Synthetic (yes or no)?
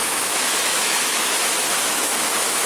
yes